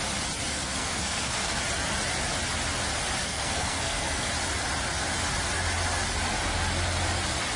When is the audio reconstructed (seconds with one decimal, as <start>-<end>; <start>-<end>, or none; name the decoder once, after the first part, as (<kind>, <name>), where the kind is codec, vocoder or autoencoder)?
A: 0.5-1.6 (codec, SNAC); 3.2-4.3